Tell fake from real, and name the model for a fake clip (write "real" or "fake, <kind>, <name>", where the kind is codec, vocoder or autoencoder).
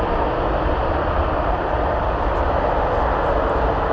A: real